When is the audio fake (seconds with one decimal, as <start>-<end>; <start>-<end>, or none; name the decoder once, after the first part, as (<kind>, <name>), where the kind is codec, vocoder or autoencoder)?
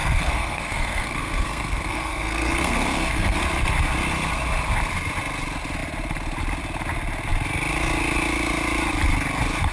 0.0-3.4 (codec, SNAC)